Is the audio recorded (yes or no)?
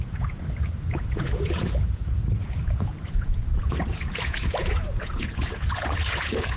no